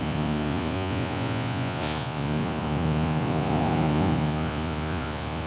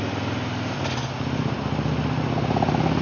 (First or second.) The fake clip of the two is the first